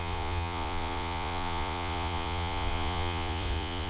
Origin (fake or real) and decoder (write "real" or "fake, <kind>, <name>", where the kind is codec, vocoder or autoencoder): fake, vocoder, Vocos